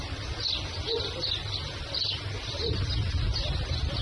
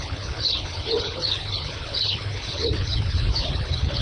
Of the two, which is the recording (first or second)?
first